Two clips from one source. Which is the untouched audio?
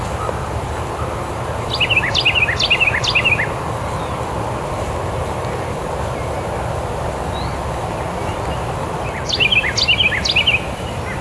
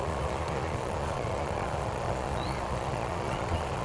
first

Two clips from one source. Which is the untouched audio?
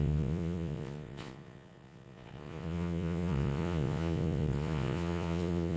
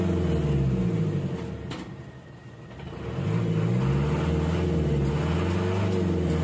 second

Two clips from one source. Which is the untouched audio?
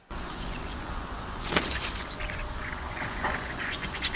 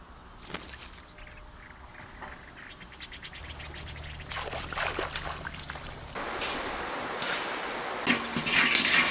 second